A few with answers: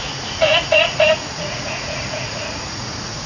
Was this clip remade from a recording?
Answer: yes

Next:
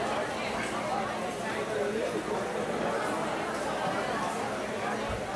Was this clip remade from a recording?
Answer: no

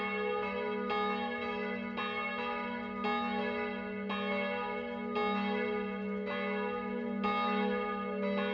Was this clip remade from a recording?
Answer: no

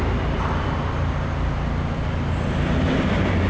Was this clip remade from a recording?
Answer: no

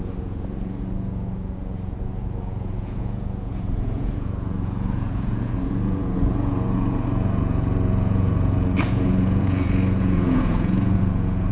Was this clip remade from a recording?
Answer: yes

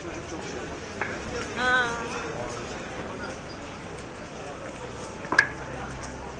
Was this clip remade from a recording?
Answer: no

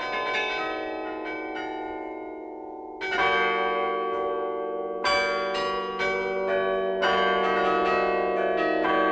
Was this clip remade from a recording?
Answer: no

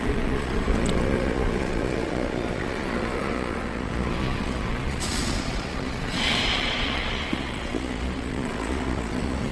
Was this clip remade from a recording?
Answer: yes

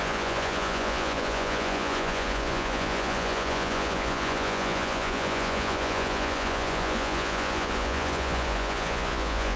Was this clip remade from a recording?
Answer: yes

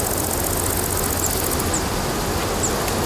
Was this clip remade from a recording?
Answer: no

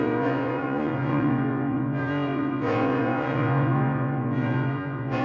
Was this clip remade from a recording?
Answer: yes